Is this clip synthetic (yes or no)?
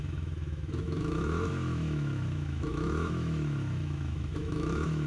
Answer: yes